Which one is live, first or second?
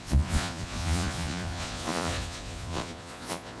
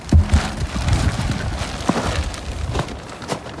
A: second